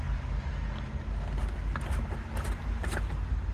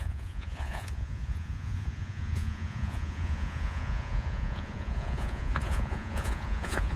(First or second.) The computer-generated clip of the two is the second